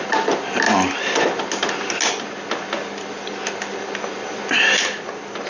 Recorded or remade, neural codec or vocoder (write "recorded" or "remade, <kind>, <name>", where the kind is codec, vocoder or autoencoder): recorded